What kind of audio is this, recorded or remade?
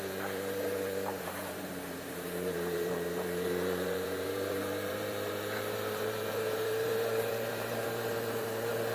remade